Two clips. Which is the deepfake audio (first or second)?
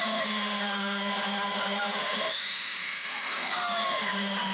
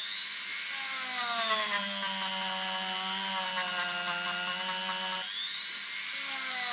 first